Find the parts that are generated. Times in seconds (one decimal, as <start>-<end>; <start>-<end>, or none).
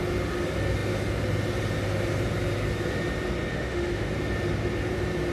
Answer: 3.5-4.1